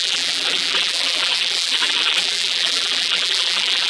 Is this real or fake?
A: fake